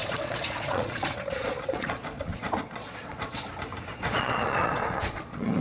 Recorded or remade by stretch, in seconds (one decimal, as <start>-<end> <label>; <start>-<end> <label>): 0.0-3.4 remade; 3.4-3.9 recorded; 3.9-5.6 remade